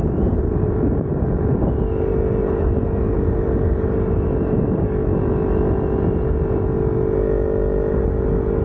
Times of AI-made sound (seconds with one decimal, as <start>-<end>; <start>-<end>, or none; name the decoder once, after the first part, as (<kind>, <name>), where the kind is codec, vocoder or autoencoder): 0.0-1.8 (vocoder, BigVGAN v2)

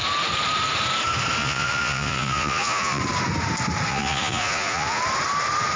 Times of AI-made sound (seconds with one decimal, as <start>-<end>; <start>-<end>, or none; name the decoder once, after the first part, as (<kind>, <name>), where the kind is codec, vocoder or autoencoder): 1.4-3.0 (vocoder, Vocos); 3.9-5.0

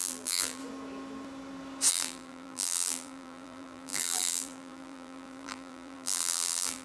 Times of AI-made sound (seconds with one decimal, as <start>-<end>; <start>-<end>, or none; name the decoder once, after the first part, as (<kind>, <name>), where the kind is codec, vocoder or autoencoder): 0.0-0.6 (vocoder, BigVGAN v2); 1.9-6.8

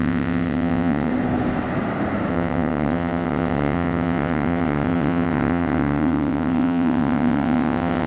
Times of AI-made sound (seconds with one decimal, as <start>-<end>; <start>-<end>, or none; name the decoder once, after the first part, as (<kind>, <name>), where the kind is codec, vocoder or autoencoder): 0.0-1.1 (vocoder, WaveNeXt); 2.3-8.1

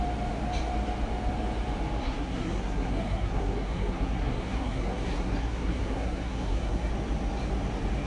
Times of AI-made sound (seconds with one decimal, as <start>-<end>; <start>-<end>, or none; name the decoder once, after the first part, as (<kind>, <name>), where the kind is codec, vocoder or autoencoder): 2.0-6.9 (codec, SNAC)

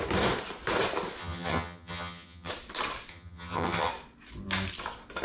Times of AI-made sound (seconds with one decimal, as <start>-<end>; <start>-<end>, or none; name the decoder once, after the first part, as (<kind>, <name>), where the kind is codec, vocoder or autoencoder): 1.2-2.5 (vocoder, HiFi-GAN); 3.1-3.9

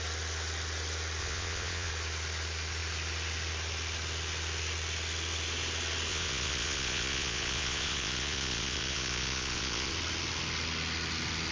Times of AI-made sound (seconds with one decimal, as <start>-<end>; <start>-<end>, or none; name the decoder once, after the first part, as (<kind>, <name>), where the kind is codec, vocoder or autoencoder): 1.2-1.9 (vocoder, Vocos); 6.1-9.9

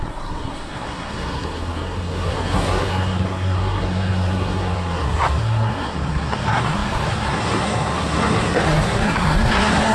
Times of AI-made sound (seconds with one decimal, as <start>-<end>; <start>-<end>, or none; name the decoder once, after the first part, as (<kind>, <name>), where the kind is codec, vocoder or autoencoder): 0.0-9.9 (codec, SNAC)